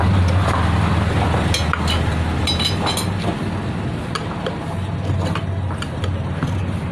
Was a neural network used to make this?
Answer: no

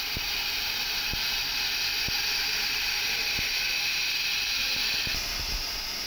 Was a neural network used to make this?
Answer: no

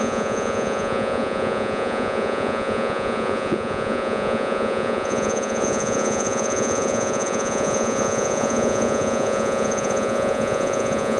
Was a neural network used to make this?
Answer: yes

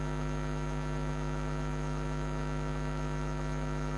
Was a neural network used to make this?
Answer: yes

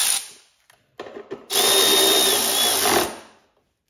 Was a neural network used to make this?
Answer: no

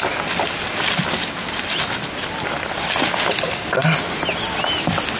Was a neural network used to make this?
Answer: no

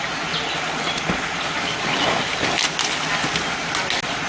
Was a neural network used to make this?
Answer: no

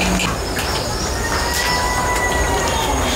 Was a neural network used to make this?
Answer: no